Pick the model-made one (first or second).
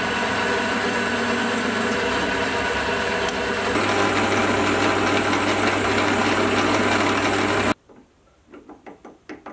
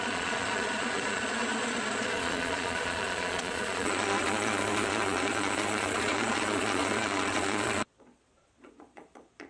second